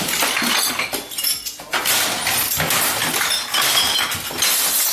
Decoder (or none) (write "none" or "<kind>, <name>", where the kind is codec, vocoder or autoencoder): none